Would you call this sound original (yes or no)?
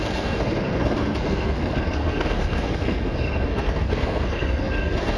no